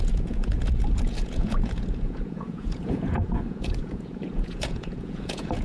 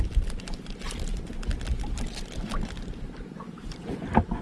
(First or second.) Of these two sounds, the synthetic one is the first